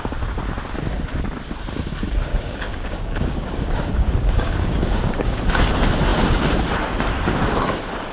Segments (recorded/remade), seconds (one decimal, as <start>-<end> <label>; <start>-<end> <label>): 0.0-2.3 recorded; 2.3-5.4 remade; 5.4-8.1 recorded